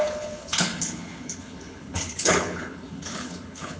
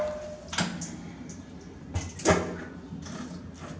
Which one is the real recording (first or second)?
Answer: second